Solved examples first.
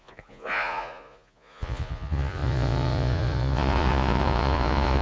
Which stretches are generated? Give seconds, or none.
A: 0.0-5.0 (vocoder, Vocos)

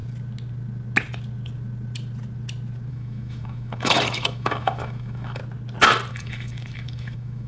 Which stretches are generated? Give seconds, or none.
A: 2.9-5.4 (autoencoder, DAC-VAE); 6.1-7.5

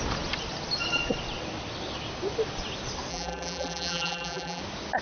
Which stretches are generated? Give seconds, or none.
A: 3.1-4.6 (vocoder, BigVGAN v2)

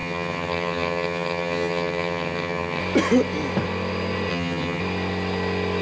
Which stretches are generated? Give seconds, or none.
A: 0.0-2.8 (vocoder, HiFi-GAN); 4.3-4.8